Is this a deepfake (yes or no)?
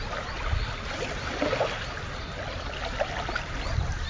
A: no